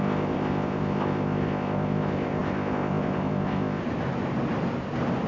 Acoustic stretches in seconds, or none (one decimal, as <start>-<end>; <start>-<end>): 3.8-5.3